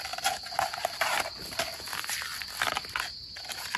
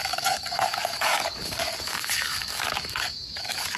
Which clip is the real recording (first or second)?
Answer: first